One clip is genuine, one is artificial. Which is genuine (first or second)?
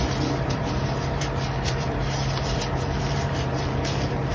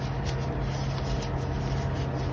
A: second